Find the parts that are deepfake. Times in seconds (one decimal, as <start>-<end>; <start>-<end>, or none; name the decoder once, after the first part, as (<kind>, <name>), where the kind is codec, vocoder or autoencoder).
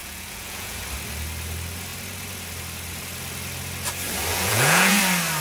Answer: 0.0-0.8 (vocoder, Vocos); 4.3-5.0